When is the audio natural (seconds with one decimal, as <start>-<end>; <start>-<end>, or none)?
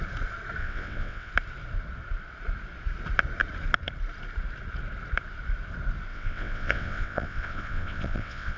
0.0-0.6; 1.3-6.1